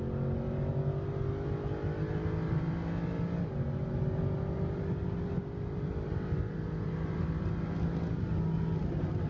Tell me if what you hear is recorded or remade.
recorded